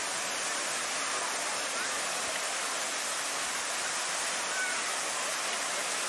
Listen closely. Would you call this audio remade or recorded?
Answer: recorded